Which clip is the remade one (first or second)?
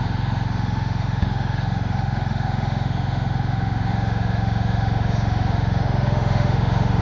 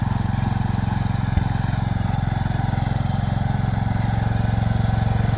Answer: first